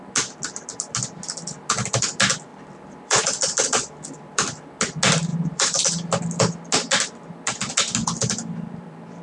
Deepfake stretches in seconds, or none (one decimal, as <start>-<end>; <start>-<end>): 2.5-4.7; 5.3-5.8; 8.0-9.2